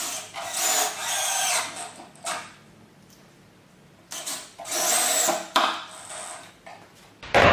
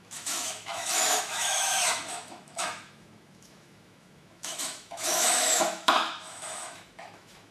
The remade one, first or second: second